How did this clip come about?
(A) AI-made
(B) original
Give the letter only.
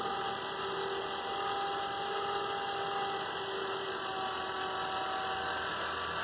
B